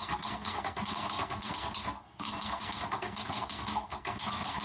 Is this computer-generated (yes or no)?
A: yes